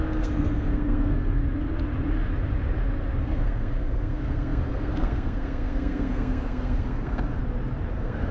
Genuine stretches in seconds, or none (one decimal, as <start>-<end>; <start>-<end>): 1.4-3.2; 7.4-7.9